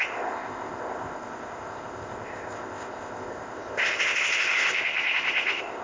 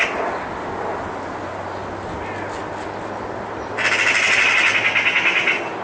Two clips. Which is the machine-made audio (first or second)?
first